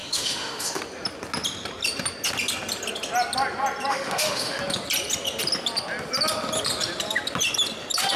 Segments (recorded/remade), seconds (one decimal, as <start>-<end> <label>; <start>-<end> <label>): 0.0-0.8 remade; 0.8-3.9 recorded; 3.9-4.6 remade; 4.6-8.2 recorded